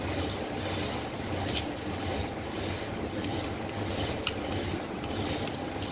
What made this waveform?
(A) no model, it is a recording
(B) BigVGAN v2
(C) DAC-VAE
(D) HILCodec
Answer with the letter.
A